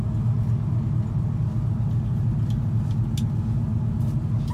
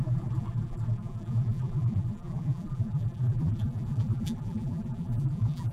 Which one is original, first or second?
first